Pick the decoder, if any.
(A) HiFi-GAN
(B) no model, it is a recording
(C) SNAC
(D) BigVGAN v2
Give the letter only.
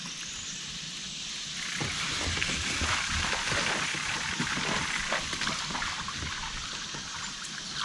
B